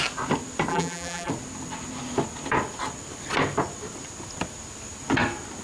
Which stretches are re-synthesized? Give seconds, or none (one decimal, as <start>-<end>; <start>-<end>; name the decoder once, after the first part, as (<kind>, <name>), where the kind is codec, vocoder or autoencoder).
0.7-1.3 (vocoder, BigVGAN v2)